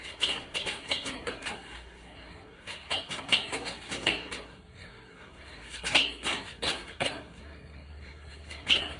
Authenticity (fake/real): fake